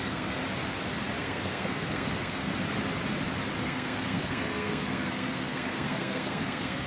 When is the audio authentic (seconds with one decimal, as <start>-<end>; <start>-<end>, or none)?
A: 0.4-1.2; 2.4-3.6